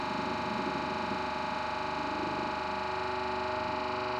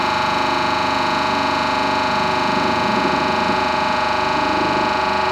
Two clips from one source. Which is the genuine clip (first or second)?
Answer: first